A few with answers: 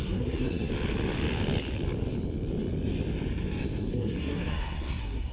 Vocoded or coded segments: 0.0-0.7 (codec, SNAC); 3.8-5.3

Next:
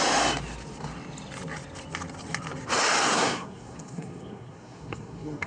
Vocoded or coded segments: 3.1-5.5 (codec, SNAC)

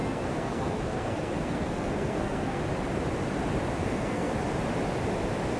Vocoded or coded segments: 0.0-2.6 (codec, SNAC); 3.8-4.3

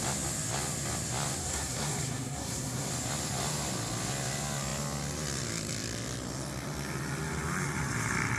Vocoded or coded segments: 1.4-2.9 (codec, SNAC)

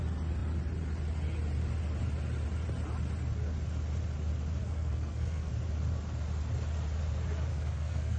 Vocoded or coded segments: 4.6-5.5 (codec, SNAC); 7.5-8.2